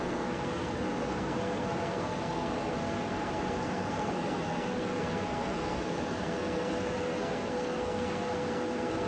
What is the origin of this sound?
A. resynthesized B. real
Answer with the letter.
A